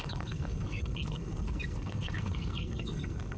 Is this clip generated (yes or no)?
yes